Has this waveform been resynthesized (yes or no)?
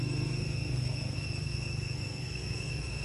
yes